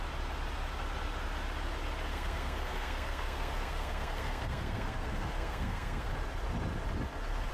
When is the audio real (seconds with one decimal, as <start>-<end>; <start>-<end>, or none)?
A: 0.0-2.1; 6.1-7.5